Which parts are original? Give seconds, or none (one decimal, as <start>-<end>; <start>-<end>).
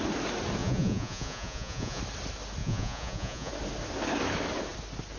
0.0-0.6; 2.0-2.6; 3.5-5.2